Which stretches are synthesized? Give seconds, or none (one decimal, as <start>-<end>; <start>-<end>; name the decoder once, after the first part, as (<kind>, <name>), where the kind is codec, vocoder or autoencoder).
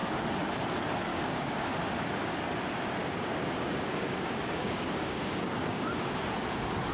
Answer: 1.1-1.7 (codec, DAC); 3.0-6.2